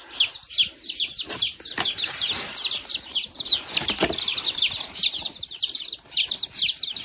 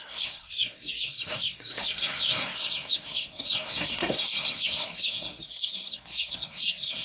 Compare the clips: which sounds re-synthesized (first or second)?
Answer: second